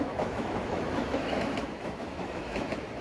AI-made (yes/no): yes